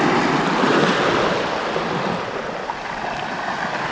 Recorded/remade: recorded